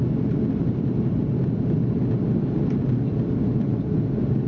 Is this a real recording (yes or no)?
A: yes